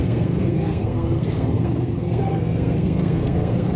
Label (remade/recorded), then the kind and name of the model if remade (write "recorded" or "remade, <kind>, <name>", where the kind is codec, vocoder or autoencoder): remade, codec, SNAC